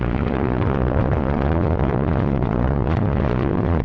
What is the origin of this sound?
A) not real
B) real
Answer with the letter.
A